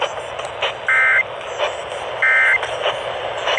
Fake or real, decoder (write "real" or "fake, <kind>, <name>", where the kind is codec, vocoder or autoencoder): real